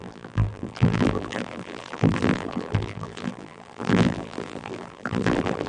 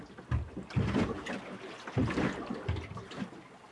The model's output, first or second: first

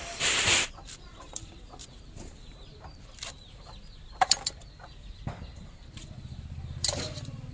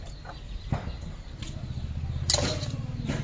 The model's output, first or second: first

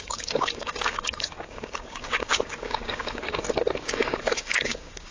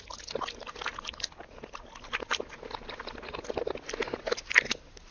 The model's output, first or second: first